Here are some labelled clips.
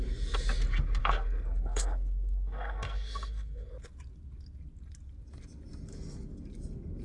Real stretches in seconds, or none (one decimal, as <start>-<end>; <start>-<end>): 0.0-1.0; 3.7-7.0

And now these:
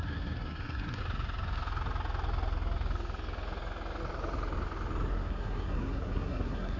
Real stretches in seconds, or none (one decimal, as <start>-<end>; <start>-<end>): 1.0-5.1

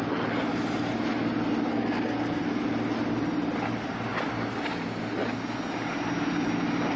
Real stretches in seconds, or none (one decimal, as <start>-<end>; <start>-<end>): 0.0-1.7; 2.6-7.0

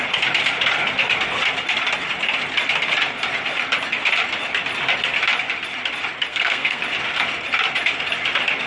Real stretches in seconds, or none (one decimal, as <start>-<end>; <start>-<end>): 0.0-6.3; 6.8-8.7